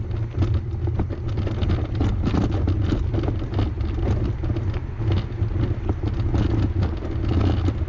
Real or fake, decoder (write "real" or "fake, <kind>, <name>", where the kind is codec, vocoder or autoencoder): real